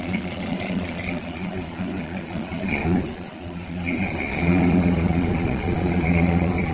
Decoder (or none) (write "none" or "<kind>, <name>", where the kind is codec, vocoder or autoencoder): vocoder, Vocos